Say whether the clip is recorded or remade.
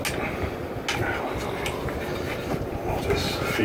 recorded